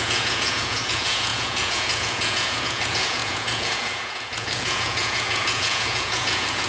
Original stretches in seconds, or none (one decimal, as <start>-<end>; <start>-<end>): none